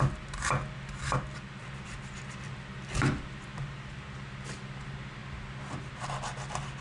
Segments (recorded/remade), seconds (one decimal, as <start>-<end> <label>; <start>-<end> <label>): 0.0-6.8 recorded